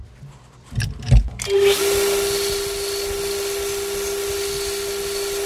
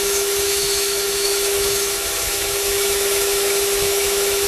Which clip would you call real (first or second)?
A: first